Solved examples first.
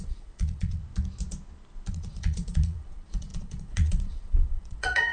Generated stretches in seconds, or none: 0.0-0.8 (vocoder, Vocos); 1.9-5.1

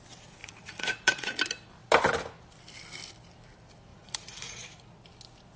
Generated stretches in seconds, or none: 0.4-1.4 (vocoder, Vocos); 3.9-5.0